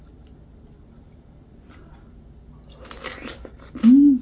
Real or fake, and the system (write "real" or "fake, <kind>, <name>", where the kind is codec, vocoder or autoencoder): real